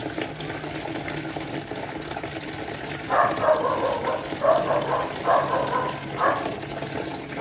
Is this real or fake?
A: real